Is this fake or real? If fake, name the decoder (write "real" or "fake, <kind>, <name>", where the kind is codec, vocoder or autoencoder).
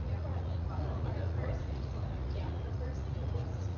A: fake, vocoder, Vocos